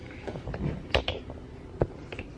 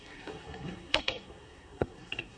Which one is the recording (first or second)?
first